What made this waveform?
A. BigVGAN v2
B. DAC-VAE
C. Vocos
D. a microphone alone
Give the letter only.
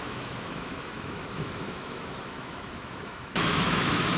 B